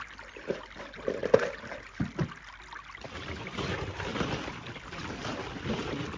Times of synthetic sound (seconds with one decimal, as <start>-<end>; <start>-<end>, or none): none